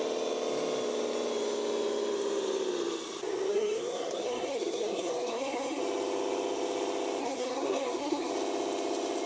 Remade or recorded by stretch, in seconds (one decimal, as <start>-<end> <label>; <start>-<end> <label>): 0.0-3.5 recorded; 3.5-5.8 remade; 5.8-7.2 recorded; 7.2-8.3 remade; 8.3-9.3 recorded